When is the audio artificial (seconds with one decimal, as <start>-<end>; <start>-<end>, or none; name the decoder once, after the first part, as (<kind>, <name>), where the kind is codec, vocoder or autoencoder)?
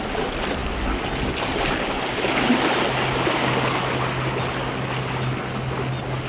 none